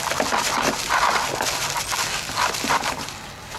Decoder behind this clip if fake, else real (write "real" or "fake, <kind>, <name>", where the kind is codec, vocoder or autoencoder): real